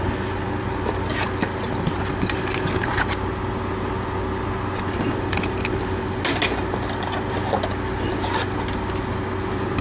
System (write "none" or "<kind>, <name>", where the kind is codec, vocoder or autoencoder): none